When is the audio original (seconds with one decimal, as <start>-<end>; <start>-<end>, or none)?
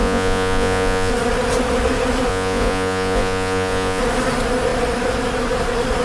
1.1-2.3; 4.0-6.0